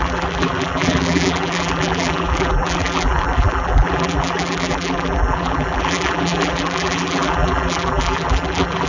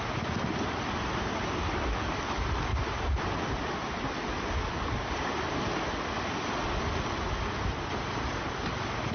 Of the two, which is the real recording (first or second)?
second